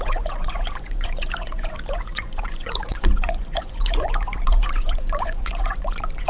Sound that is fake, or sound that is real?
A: fake